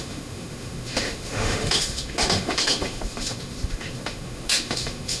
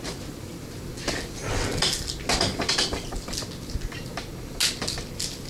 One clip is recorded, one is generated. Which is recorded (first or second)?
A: second